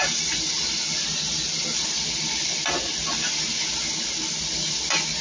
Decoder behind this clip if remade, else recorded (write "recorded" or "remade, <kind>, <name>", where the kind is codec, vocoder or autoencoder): recorded